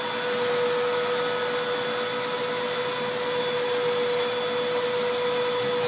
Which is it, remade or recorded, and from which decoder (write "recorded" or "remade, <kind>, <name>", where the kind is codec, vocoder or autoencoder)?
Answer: recorded